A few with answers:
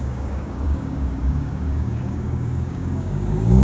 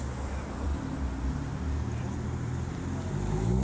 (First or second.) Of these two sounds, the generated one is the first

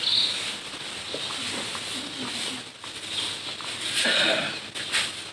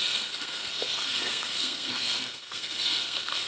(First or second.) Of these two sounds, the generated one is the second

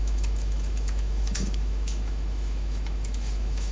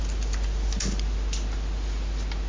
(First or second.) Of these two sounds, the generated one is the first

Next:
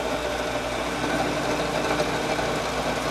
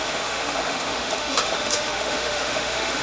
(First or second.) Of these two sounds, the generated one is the second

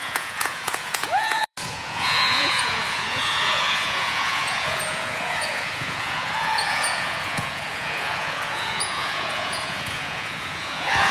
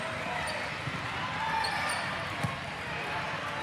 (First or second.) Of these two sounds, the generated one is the first